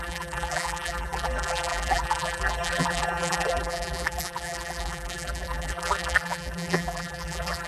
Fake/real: fake